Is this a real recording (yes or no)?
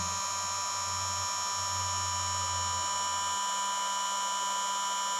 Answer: yes